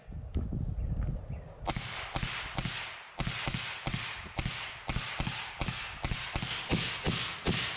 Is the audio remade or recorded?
recorded